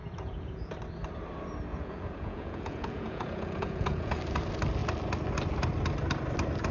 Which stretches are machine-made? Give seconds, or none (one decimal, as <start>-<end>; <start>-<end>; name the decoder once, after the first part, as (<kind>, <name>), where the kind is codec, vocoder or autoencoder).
0.0-0.7 (vocoder, Vocos); 1.7-4.2

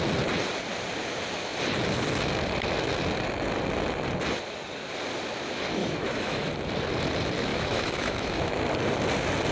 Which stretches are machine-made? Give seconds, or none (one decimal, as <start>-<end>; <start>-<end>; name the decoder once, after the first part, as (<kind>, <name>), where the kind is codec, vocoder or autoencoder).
5.8-6.5 (autoencoder, DAC-VAE); 7.5-8.6

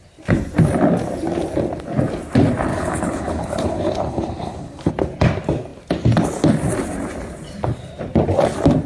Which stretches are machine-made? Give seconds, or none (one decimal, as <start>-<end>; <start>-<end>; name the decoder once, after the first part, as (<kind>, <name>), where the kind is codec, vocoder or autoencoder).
2.7-4.9 (codec, HILCodec)

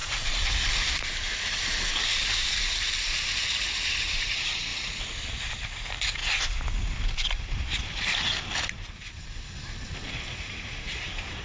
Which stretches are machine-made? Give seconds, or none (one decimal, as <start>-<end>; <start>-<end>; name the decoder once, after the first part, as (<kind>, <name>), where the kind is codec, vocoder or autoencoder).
0.7-4.7 (vocoder, BigVGAN v2); 5.5-6.2; 7.3-11.4

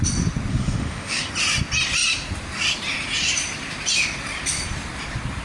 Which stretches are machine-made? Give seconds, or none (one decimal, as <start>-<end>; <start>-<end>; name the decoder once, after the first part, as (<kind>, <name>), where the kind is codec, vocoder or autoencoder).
0.5-1.3 (autoencoder, DAC-VAE)